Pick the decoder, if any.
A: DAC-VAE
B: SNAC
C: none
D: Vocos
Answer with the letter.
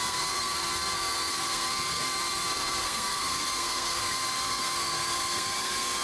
B